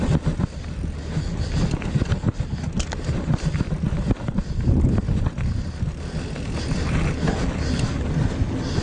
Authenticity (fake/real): real